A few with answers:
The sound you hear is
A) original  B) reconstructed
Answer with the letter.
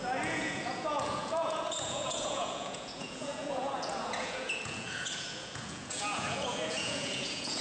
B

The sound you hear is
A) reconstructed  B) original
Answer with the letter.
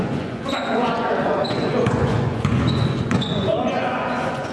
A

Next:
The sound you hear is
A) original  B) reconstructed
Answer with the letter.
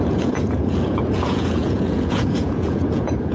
B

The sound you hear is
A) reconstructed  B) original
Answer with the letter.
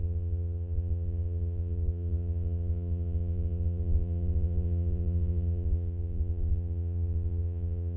A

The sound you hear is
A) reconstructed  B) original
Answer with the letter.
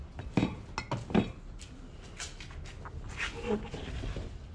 B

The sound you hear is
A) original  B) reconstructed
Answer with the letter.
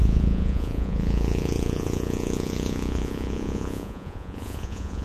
B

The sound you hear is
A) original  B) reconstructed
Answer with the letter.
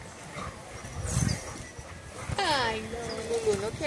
A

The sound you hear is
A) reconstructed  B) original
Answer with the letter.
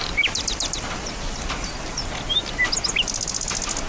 B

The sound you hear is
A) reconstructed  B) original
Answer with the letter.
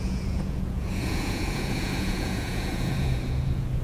A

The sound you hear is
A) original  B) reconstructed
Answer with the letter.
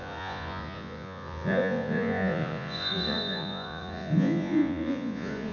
B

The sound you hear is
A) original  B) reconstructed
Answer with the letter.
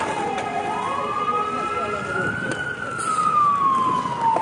A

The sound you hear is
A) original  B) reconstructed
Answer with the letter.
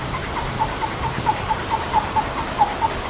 A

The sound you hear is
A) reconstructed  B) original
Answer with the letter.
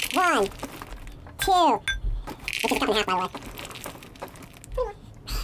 B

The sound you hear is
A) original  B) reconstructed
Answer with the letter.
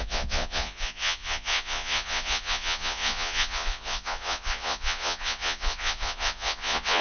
B